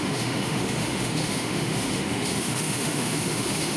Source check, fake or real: fake